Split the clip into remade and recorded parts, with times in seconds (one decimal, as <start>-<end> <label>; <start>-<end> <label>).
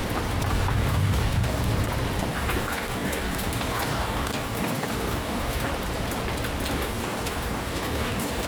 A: 0.0-0.5 recorded; 0.5-1.7 remade; 1.7-2.3 recorded; 2.3-5.7 remade; 5.7-6.7 recorded; 6.7-8.5 remade